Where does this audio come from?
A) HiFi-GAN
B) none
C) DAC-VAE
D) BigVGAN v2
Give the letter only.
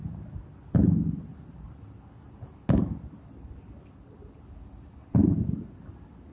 B